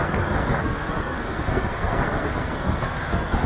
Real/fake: fake